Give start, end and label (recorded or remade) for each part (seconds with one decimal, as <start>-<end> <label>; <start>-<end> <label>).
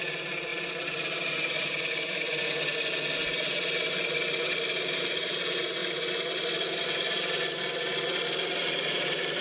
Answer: 0.0-9.4 recorded